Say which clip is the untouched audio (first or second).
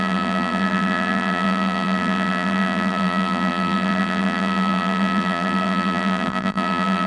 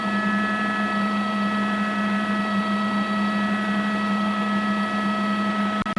second